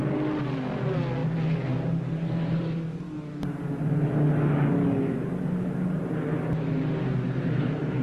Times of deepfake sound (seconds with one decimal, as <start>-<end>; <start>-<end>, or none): none